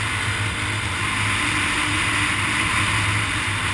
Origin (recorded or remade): recorded